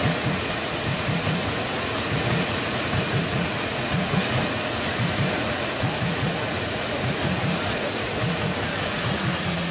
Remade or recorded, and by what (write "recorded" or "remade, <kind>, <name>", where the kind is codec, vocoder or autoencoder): remade, vocoder, Vocos